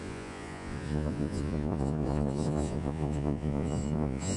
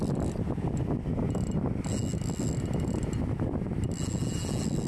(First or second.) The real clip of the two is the second